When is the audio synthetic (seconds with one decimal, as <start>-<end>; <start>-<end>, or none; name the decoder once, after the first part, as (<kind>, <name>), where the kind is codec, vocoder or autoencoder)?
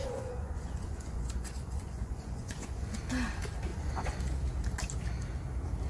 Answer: 0.0-3.0 (vocoder, Vocos); 3.7-4.2